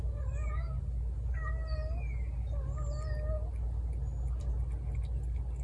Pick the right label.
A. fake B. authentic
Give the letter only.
B